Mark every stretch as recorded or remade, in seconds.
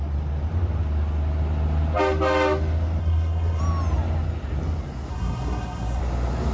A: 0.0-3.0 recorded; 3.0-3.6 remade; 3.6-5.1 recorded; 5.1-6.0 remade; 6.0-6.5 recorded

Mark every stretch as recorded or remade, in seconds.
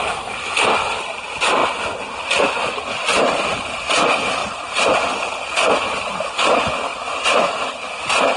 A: 0.0-8.4 recorded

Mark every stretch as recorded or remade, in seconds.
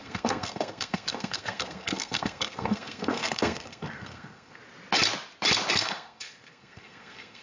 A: 0.0-4.6 remade; 4.6-5.7 recorded; 5.7-7.4 remade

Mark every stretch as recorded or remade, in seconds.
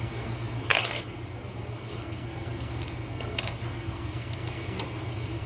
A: 0.0-5.5 remade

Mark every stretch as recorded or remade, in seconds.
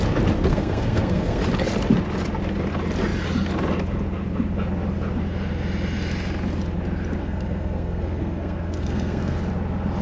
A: 0.0-0.5 recorded; 0.5-1.4 remade; 1.4-7.2 recorded; 7.2-9.4 remade; 9.4-10.0 recorded